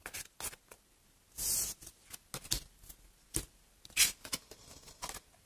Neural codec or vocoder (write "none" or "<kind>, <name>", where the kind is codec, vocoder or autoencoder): none